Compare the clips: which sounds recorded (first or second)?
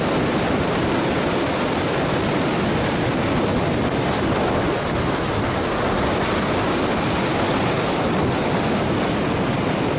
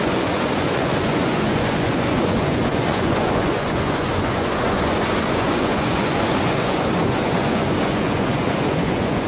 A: first